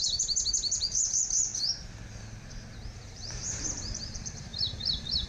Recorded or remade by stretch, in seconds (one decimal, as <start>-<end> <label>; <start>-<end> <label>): 0.0-1.5 remade; 1.5-3.0 recorded; 3.0-5.3 remade